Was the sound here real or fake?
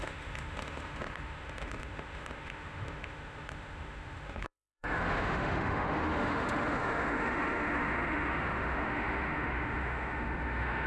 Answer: fake